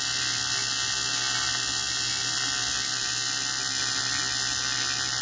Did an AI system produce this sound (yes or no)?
no